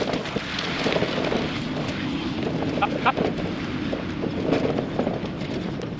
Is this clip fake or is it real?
real